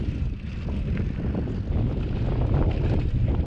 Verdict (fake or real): real